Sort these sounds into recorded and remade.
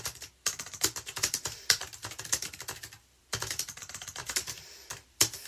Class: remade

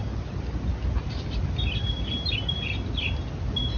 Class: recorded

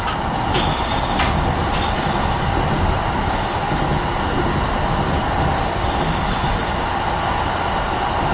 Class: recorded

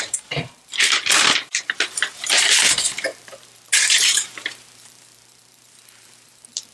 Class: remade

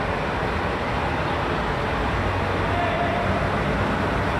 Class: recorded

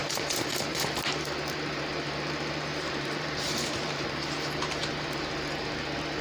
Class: remade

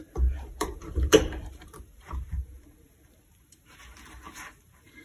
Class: remade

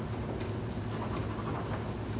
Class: recorded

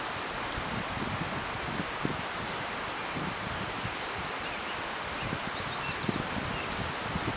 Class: recorded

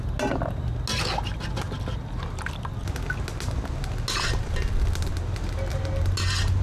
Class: recorded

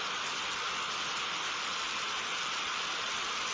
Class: recorded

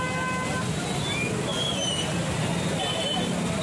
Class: recorded